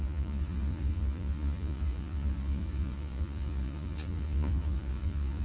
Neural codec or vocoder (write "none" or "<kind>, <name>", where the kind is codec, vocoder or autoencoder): vocoder, Vocos